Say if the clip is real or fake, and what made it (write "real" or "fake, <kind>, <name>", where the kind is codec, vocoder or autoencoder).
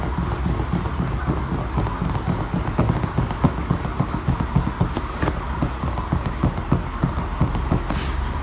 real